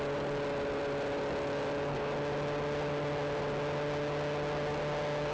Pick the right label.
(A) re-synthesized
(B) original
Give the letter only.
B